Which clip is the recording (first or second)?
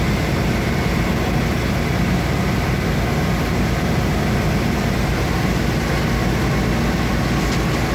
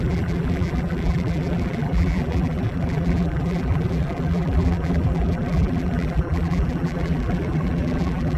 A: first